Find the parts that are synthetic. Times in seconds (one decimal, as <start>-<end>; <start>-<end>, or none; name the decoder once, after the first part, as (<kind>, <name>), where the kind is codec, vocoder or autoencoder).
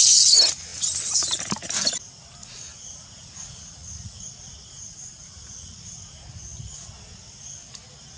2.4-6.0 (vocoder, Vocos)